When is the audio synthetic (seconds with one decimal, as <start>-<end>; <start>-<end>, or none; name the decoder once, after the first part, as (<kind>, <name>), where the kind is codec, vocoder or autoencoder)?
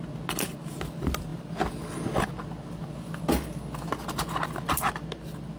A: none